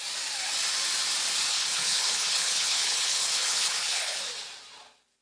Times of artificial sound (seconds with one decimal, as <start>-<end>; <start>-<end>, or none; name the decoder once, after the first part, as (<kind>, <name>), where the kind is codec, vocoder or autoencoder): 1.5-4.2 (codec, HILCodec)